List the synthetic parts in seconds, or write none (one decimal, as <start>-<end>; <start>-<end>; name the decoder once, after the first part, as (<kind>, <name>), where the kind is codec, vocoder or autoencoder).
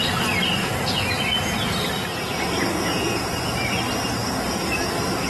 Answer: 0.6-2.4 (vocoder, Vocos); 2.9-3.5